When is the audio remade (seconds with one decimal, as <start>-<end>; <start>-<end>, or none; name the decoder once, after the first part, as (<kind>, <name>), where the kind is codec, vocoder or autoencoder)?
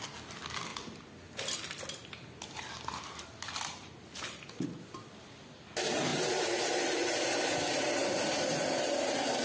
none